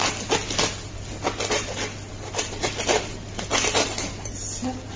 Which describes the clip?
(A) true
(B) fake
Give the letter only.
A